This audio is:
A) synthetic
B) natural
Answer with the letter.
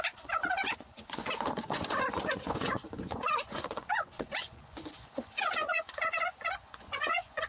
A